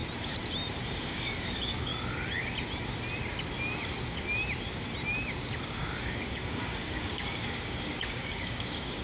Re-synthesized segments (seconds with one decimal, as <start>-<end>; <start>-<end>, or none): 1.0-1.9; 5.7-9.0